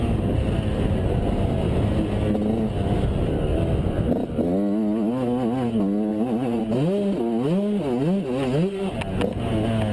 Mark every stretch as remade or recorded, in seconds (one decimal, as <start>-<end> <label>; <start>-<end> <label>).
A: 0.0-6.1 recorded; 6.1-6.6 remade; 6.6-9.9 recorded